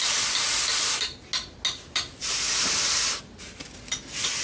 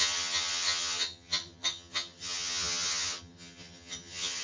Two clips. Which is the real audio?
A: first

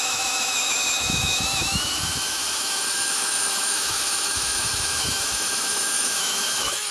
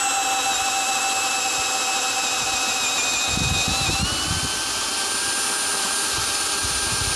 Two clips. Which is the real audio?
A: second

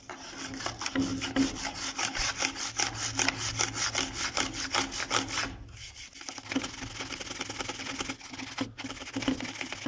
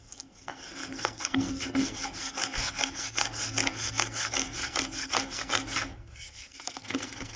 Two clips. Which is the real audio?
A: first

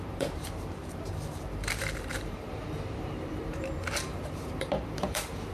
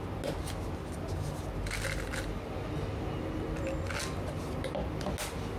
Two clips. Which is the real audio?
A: second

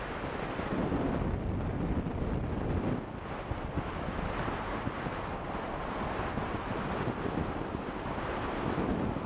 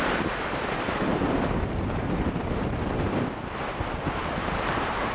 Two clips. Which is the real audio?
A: first